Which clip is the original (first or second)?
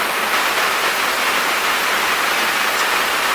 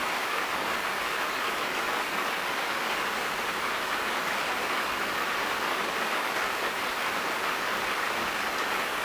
first